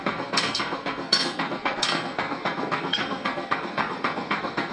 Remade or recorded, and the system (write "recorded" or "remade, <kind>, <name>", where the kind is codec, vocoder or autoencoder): remade, codec, SNAC